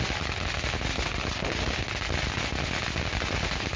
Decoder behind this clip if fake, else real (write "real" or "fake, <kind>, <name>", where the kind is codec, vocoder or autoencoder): real